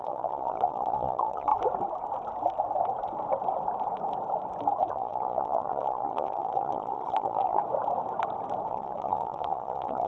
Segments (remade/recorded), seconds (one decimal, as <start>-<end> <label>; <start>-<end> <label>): 0.0-1.5 remade; 1.5-4.9 recorded; 4.9-7.6 remade; 7.6-8.7 recorded; 8.7-10.1 remade